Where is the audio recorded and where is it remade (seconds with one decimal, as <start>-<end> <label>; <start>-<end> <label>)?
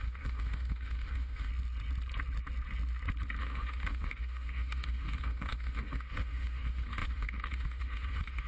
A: 0.0-1.5 remade; 1.5-3.4 recorded; 3.4-8.5 remade